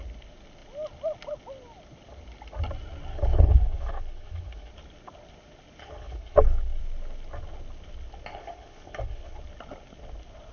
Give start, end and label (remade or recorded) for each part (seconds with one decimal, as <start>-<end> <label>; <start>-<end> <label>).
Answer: 0.0-3.1 recorded; 3.1-4.7 remade; 4.7-5.8 recorded; 5.8-6.8 remade; 6.8-8.3 recorded; 8.3-9.4 remade; 9.4-10.5 recorded